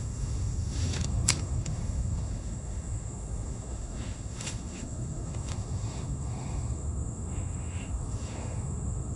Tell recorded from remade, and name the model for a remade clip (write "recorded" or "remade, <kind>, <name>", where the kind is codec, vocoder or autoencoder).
remade, autoencoder, DAC-VAE